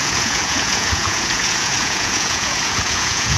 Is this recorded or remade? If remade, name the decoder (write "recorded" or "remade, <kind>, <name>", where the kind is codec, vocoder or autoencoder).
remade, vocoder, Vocos